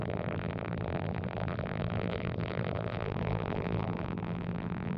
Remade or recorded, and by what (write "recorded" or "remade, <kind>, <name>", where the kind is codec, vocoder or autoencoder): remade, vocoder, BigVGAN v2